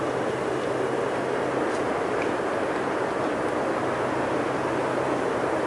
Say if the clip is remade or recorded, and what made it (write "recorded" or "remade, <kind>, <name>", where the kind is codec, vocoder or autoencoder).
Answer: recorded